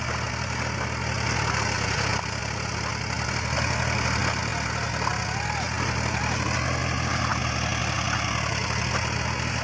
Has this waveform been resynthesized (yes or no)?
no